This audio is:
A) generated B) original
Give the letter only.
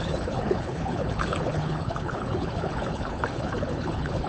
A